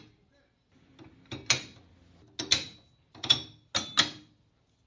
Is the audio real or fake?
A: real